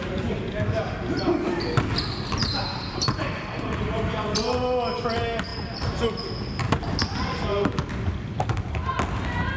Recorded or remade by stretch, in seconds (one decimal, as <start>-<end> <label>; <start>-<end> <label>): 0.0-2.4 recorded; 2.4-3.1 remade; 3.1-9.6 recorded